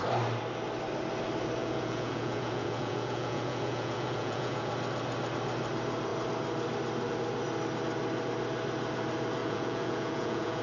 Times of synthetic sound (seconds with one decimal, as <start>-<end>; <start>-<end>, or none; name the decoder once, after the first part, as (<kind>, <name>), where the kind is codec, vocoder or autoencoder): 1.6-4.7 (vocoder, Vocos); 9.4-10.6